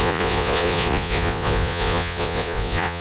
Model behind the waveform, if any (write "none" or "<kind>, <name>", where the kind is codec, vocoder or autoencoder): vocoder, Vocos